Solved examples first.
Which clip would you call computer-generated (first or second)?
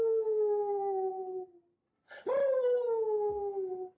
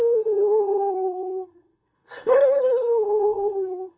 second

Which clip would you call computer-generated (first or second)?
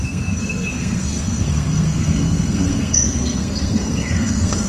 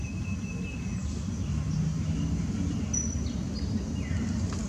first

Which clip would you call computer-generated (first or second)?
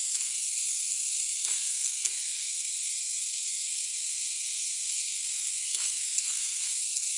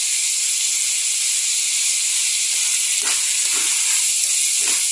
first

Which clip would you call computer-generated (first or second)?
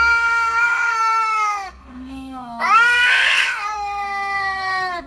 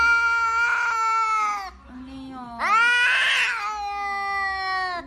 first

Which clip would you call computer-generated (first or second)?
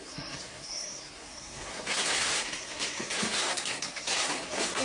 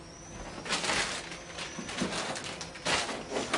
first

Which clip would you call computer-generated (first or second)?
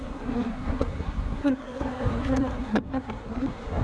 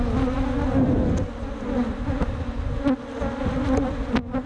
first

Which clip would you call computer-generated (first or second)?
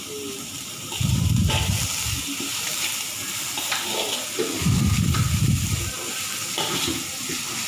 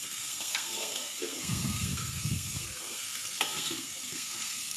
second